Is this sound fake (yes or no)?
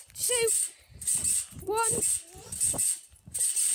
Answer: no